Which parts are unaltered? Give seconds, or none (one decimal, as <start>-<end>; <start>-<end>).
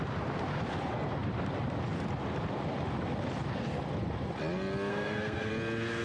0.0-4.9; 5.5-6.0